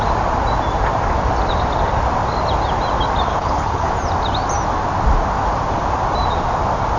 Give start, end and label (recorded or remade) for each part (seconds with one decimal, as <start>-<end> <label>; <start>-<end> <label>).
0.0-3.3 recorded; 3.3-3.9 remade; 3.9-7.0 recorded